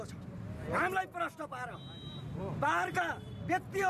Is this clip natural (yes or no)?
yes